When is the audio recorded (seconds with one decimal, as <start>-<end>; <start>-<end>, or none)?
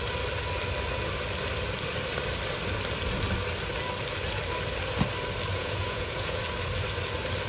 0.0-5.5; 6.4-7.5